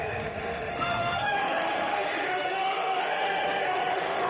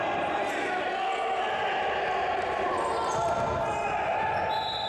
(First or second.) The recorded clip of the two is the second